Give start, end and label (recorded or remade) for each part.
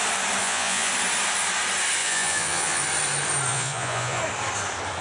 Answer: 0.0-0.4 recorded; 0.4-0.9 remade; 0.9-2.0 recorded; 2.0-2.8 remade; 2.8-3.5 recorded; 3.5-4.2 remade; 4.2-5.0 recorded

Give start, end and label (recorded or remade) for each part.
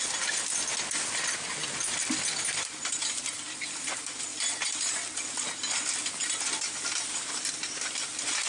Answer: 0.0-4.3 recorded; 4.3-4.9 remade; 4.9-8.5 recorded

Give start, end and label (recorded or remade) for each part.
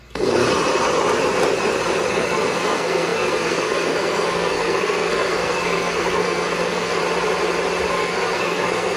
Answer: 0.0-0.4 remade; 0.4-2.1 recorded; 2.1-7.0 remade; 7.0-7.9 recorded; 7.9-9.0 remade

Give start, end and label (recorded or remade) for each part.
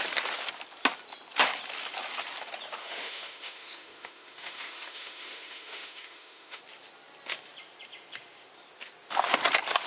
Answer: 0.0-2.8 recorded; 2.8-6.6 remade; 6.6-9.9 recorded